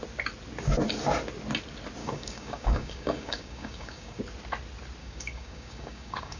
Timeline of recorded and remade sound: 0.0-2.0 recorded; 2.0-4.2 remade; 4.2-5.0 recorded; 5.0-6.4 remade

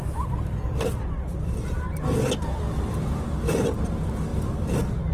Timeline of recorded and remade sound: 0.0-5.1 recorded

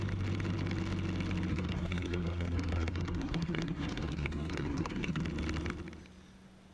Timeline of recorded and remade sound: 0.0-1.5 recorded; 1.5-5.2 remade; 5.2-6.7 recorded

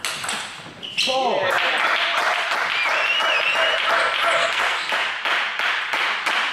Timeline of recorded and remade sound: 0.0-4.4 recorded; 4.4-4.9 remade; 4.9-6.5 recorded

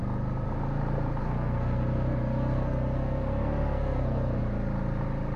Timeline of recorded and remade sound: 0.0-1.2 recorded; 1.2-4.4 remade; 4.4-5.4 recorded

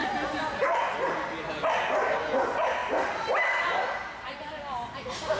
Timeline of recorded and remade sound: 0.0-2.8 recorded; 2.8-4.5 remade; 4.5-5.4 recorded

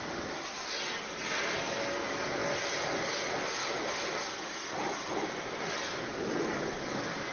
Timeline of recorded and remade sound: 0.0-7.3 recorded

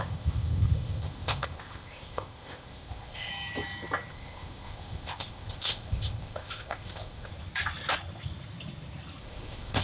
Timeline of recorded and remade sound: 0.0-3.3 remade; 3.3-4.1 recorded; 4.1-7.3 remade; 7.3-9.2 recorded; 9.2-9.8 remade